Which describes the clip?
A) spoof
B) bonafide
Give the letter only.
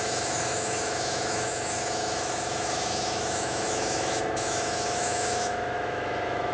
A